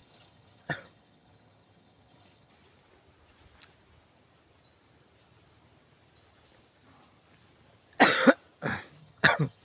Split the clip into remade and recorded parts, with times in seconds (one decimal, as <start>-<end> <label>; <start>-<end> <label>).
0.0-2.5 remade; 2.5-9.0 recorded; 9.0-9.6 remade